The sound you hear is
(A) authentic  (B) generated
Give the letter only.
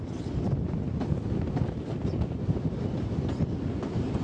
A